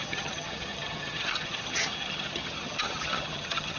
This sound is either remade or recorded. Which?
remade